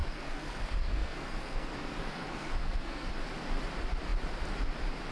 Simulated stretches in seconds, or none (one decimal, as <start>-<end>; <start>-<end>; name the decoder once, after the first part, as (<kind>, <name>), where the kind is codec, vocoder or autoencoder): 0.0-3.1 (codec, SNAC)